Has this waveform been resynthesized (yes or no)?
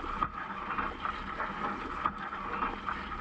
no